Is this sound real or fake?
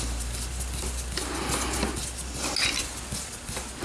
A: real